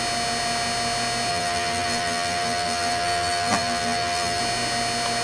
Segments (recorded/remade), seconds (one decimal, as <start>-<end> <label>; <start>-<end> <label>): 0.0-1.3 recorded; 1.3-4.4 remade; 4.4-5.2 recorded